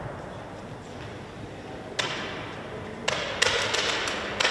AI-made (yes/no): no